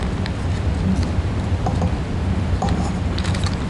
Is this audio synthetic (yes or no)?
yes